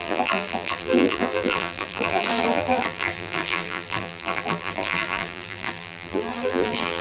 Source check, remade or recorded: remade